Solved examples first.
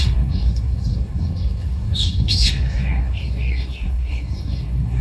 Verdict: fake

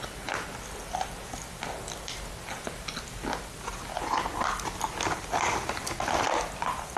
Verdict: real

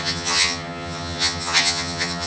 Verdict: fake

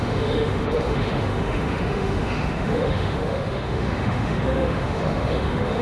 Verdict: fake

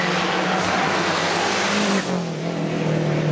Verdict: real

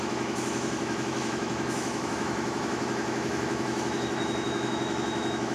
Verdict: fake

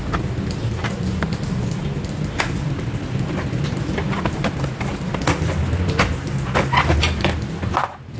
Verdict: real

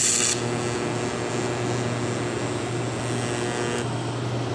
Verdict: real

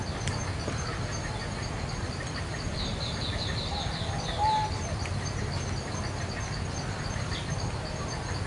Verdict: real